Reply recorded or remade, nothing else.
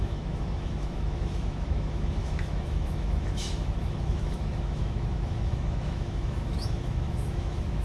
remade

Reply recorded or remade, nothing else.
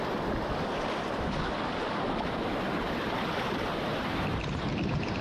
remade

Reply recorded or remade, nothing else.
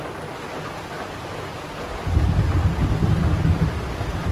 recorded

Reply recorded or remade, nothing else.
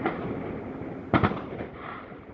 recorded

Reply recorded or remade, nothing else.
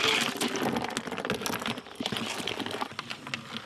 recorded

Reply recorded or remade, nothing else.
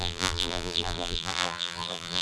remade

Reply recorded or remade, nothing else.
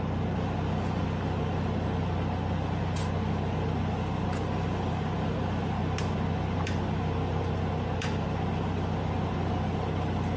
recorded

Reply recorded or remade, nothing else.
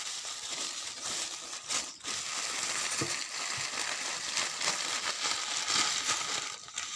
recorded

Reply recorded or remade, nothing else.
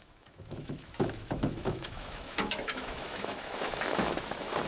remade